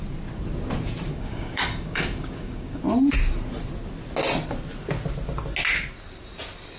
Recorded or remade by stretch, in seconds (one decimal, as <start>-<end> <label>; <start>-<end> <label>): 0.0-1.1 recorded; 1.1-2.8 remade; 2.8-6.8 recorded